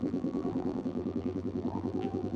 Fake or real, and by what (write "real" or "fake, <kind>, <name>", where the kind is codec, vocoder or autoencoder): fake, vocoder, BigVGAN v2